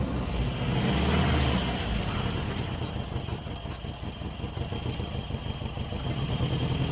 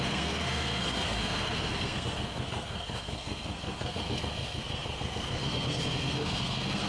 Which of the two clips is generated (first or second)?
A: second